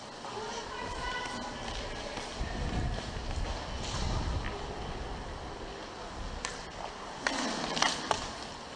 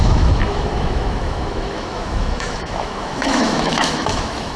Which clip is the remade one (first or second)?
second